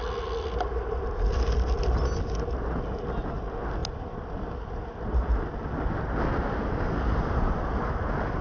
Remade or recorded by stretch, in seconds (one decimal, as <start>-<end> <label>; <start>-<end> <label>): 0.0-8.4 recorded